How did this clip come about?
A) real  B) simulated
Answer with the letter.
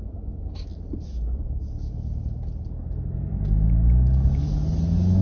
A